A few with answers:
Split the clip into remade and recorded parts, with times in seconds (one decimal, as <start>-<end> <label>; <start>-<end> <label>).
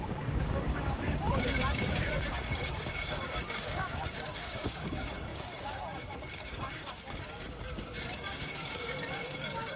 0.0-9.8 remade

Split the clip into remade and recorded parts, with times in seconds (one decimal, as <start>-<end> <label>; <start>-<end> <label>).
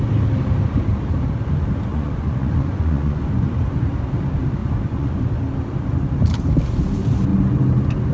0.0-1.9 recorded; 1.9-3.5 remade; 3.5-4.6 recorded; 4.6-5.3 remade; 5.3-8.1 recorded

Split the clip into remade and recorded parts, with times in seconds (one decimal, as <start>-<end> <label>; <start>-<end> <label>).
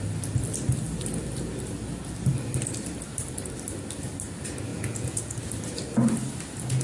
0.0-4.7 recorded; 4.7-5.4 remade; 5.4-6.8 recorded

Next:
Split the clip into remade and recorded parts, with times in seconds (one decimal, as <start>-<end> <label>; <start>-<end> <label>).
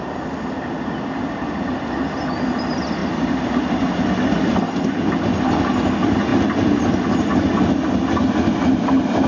0.0-9.3 recorded